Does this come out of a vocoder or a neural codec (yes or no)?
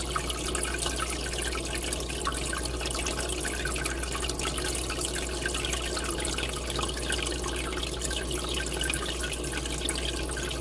no